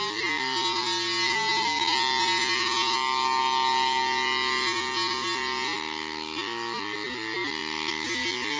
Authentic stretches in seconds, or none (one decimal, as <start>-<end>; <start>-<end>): 0.0-8.6